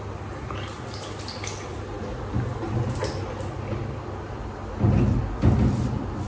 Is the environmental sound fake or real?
real